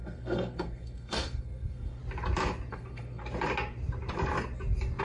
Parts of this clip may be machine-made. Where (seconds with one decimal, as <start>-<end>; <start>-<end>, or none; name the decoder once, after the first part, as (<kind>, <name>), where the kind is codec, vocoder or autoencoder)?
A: 0.0-2.0 (codec, SNAC); 2.7-3.2